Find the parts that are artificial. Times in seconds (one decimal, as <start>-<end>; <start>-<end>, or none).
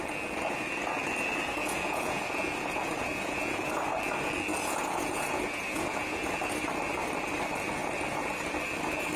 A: 1.6-3.7; 4.5-6.3